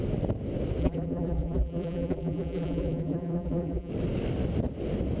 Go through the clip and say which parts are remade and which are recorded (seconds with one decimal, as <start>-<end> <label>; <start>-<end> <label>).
0.0-0.8 recorded; 0.8-3.9 remade; 3.9-5.2 recorded